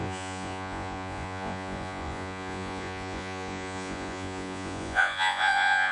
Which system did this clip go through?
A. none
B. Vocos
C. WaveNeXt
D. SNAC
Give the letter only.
B